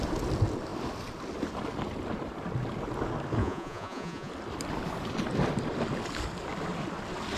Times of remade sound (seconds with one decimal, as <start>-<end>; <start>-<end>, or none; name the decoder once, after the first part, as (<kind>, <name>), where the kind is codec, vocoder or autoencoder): 3.4-4.3 (vocoder, Vocos)